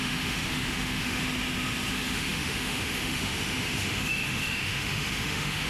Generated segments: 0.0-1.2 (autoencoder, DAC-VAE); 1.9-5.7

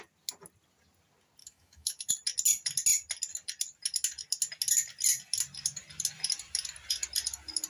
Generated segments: 1.4-2.1 (autoencoder, DAC-VAE)

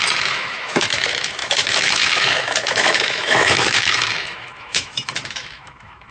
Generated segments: 0.0-6.1 (autoencoder, DAC-VAE)